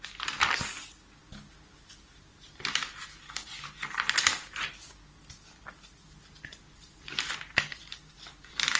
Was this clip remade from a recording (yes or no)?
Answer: no